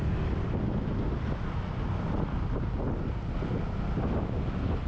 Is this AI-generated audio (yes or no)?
no